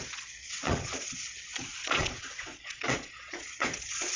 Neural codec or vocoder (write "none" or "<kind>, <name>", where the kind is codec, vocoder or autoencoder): vocoder, Vocos